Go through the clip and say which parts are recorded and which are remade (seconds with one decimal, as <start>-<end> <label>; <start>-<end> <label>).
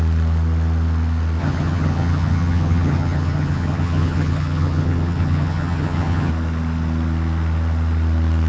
0.0-1.4 recorded; 1.4-6.3 remade; 6.3-8.5 recorded